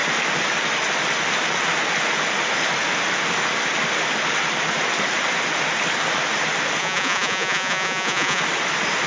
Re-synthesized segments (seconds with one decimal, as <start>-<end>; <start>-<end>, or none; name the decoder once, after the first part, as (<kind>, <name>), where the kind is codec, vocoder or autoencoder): 6.8-8.4 (vocoder, Vocos)